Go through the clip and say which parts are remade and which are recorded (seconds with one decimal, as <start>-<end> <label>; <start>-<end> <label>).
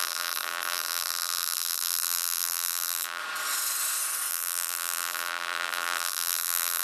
0.0-3.2 remade; 3.2-4.3 recorded; 4.3-6.8 remade